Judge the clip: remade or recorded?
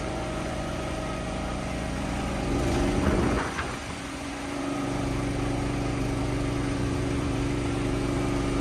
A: remade